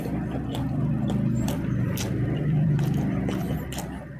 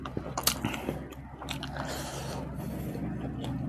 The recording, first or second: second